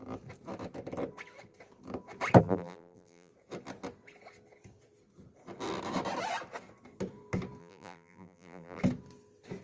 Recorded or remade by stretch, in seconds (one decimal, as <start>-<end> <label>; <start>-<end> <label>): 0.0-2.4 recorded; 2.4-3.3 remade; 3.3-7.6 recorded; 7.6-8.8 remade; 8.8-9.6 recorded